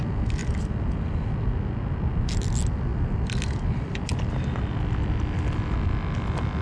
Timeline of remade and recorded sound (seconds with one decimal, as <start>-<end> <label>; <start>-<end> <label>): 0.0-6.6 recorded